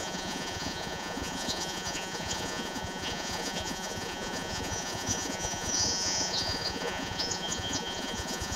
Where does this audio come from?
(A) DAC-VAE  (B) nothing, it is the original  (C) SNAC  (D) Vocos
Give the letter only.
D